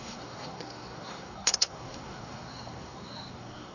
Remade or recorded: remade